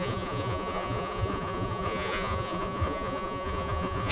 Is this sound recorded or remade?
remade